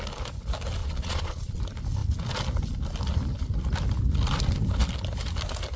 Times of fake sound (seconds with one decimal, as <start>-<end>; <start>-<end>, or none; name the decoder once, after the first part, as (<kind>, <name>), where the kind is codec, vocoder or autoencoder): 0.8-1.6 (vocoder, Vocos)